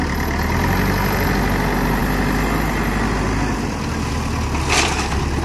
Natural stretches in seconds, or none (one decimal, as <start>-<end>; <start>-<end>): 0.0-5.4